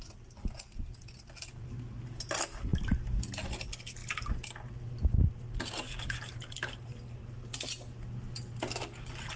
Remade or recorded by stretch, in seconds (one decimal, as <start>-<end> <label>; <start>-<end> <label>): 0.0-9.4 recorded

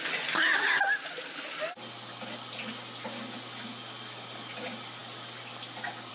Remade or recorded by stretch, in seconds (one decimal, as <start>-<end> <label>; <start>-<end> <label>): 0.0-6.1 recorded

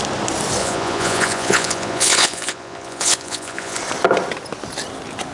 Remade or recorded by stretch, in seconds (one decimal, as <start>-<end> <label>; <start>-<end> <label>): 0.0-0.6 recorded; 0.6-3.8 remade; 3.8-5.3 recorded

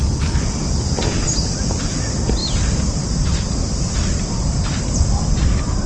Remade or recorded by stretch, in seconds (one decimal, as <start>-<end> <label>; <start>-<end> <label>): 0.0-5.9 recorded

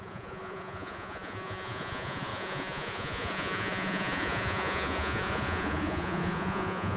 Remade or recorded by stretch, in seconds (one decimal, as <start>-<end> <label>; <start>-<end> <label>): 0.0-7.0 remade

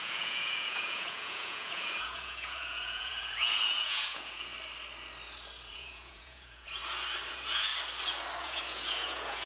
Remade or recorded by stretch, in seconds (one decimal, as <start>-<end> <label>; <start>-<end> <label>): 0.0-4.5 remade; 4.5-5.7 recorded; 5.7-6.8 remade; 6.8-7.3 recorded; 7.3-7.7 remade; 7.7-8.4 recorded; 8.4-9.5 remade

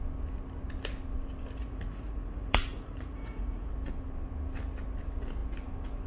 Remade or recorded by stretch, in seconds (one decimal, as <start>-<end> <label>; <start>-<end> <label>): 0.0-1.6 recorded; 1.6-3.7 remade; 3.7-6.1 recorded

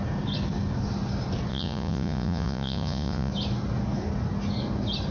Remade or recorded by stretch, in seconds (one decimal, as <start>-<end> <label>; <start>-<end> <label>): 0.0-1.5 recorded; 1.5-3.3 remade; 3.3-5.1 recorded